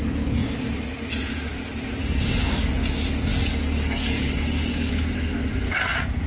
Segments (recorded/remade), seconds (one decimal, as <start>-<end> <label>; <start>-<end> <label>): 0.0-2.0 recorded; 2.0-2.7 remade; 2.7-3.3 recorded; 3.3-4.9 remade; 4.9-6.3 recorded